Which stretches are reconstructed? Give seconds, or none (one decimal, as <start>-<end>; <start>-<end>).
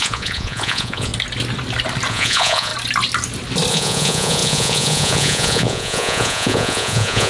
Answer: 0.0-1.1; 2.1-2.7; 3.7-7.3